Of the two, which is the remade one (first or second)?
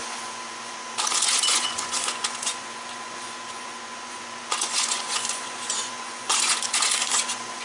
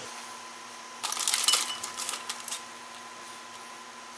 first